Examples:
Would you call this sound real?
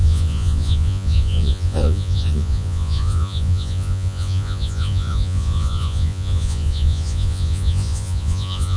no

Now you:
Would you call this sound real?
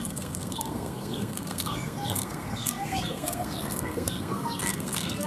no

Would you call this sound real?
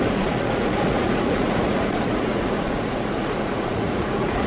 no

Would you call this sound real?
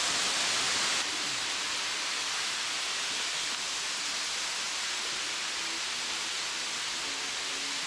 yes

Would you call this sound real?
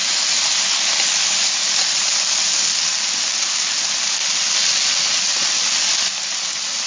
yes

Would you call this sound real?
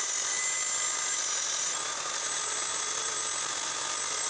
yes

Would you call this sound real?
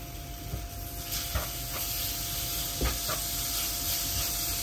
yes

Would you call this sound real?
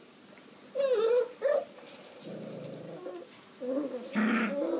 yes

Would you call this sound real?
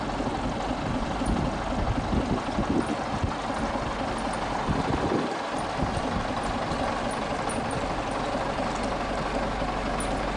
yes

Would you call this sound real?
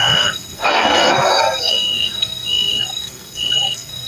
no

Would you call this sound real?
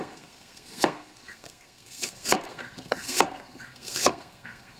no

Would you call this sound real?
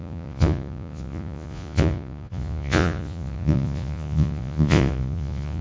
no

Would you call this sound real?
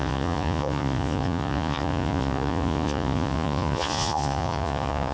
no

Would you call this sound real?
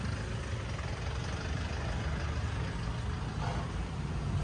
yes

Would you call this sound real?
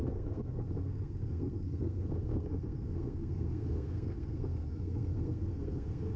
no